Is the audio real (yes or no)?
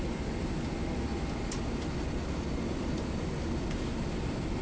yes